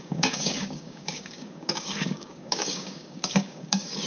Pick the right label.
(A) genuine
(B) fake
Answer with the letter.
B